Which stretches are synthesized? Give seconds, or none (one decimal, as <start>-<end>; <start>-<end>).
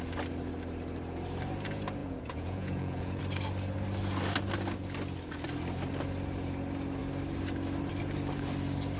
2.0-3.2